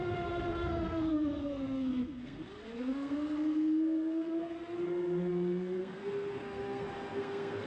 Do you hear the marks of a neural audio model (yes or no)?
yes